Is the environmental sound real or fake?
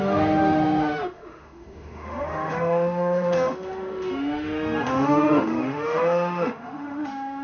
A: fake